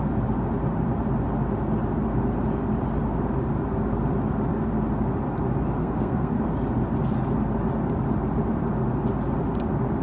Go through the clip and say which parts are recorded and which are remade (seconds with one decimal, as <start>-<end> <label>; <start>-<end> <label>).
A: 0.0-5.8 recorded; 5.8-6.4 remade; 6.4-10.0 recorded